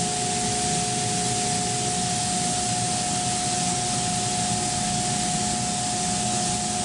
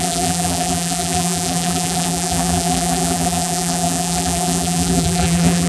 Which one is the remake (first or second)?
second